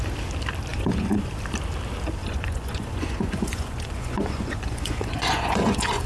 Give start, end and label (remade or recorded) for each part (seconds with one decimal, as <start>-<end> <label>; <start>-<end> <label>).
0.0-0.7 recorded; 0.7-1.3 remade; 1.3-2.2 recorded; 2.2-6.1 remade